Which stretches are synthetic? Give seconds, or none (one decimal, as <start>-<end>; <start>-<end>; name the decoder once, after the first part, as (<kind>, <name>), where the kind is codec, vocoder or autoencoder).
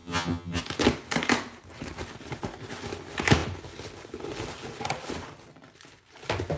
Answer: 0.0-0.6 (vocoder, HiFi-GAN)